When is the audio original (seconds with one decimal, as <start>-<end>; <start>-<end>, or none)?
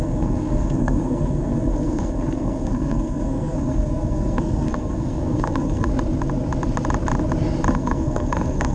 5.9-7.7